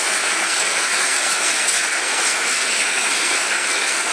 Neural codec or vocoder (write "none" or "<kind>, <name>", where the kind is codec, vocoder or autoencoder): codec, SNAC